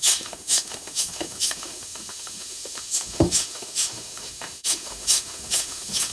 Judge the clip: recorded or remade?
remade